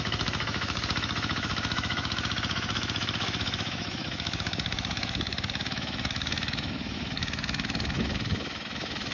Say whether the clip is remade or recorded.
remade